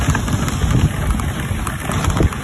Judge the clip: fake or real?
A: real